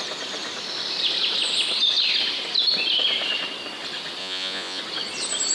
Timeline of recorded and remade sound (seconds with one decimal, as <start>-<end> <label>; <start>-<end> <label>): 0.0-4.2 recorded; 4.2-4.8 remade; 4.8-5.5 recorded